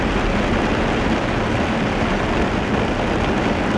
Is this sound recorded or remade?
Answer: recorded